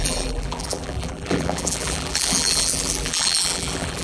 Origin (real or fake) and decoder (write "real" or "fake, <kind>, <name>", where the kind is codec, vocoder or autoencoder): fake, vocoder, BigVGAN v2